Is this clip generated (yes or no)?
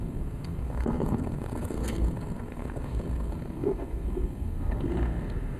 yes